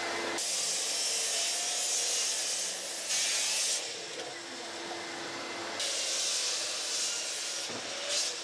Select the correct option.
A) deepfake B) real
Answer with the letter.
B